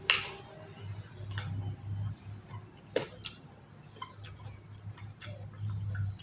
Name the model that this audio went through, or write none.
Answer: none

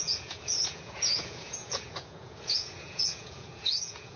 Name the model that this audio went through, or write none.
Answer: vocoder, Vocos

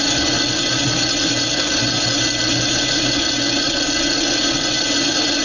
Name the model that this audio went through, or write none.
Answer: none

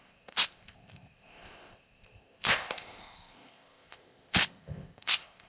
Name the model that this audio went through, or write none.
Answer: codec, ZipCodec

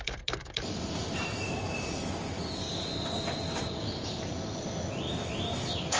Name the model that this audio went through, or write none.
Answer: none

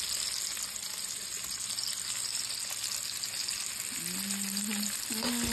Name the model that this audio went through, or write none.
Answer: none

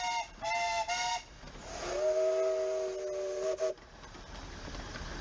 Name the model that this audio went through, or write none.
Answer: none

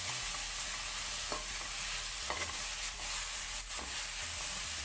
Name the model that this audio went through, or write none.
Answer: none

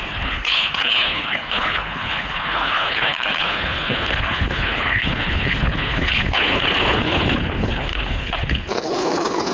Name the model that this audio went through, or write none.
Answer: codec, HILCodec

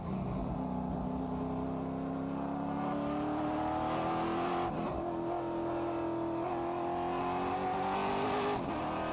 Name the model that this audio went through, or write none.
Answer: none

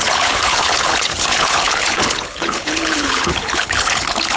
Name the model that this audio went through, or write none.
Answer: codec, HILCodec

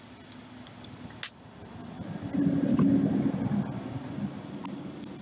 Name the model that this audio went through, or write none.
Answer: none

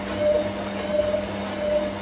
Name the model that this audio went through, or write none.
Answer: none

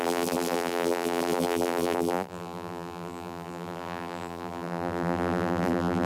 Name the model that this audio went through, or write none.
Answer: vocoder, BigVGAN v2